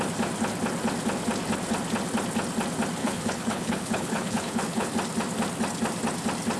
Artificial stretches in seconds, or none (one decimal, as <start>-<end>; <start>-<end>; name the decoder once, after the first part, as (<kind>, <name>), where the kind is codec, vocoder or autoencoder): 3.0-4.9 (codec, HILCodec)